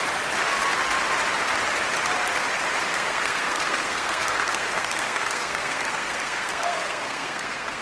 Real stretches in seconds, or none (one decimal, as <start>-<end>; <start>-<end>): 0.0-2.9